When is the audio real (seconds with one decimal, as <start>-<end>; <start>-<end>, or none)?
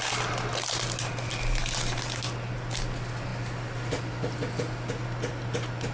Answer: 0.0-5.9